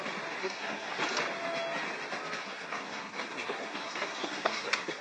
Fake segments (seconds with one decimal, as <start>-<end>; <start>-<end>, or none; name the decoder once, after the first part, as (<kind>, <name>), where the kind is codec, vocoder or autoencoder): 0.4-1.0 (codec, SNAC); 2.4-5.0